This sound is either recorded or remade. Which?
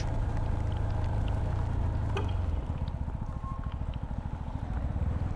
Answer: recorded